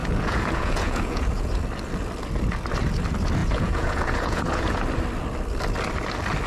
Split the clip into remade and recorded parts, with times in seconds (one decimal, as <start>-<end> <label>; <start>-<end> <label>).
0.0-1.5 remade; 1.5-3.4 recorded; 3.4-4.8 remade; 4.8-6.5 recorded